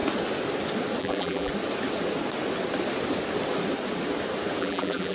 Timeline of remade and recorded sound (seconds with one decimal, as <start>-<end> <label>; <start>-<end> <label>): 0.0-1.0 recorded; 1.0-1.5 remade; 1.5-4.6 recorded; 4.6-5.1 remade